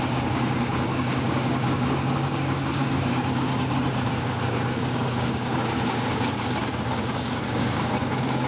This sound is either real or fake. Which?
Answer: fake